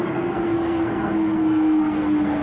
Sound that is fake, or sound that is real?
fake